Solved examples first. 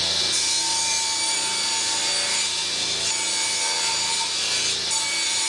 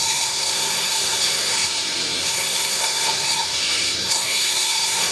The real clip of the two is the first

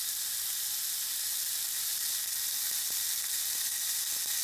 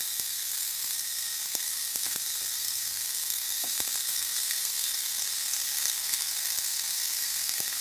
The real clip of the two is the first